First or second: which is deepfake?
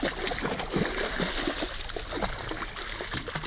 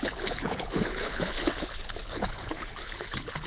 second